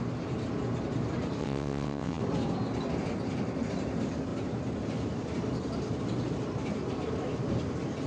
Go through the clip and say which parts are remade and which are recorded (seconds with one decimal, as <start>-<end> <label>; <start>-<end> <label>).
0.0-1.4 recorded; 1.4-2.2 remade; 2.2-8.1 recorded